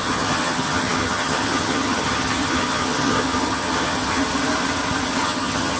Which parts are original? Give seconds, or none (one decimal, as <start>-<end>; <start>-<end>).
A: 4.2-5.2